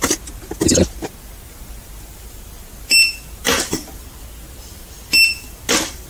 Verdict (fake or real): real